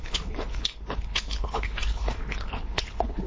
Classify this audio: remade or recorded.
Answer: remade